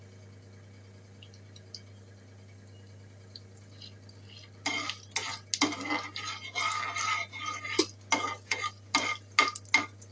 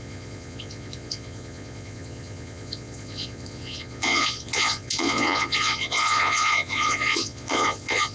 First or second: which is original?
first